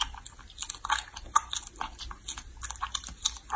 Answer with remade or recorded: recorded